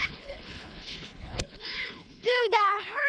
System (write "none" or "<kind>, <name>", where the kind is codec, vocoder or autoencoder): codec, HILCodec